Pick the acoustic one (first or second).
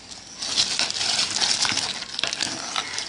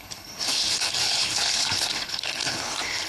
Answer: first